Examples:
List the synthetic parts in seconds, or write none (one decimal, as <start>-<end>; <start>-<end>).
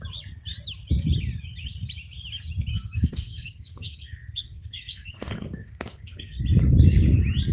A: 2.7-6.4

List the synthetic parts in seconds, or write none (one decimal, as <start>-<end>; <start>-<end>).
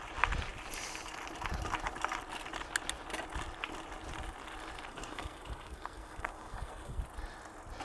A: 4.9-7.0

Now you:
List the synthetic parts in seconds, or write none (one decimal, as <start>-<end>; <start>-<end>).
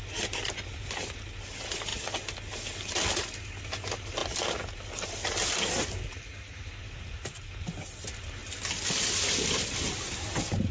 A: none